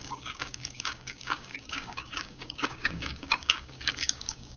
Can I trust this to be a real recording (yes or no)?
no